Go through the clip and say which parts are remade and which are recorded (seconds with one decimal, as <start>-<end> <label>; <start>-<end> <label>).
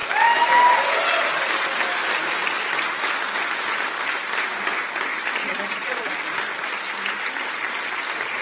0.0-5.4 recorded; 5.4-6.1 remade; 6.1-8.4 recorded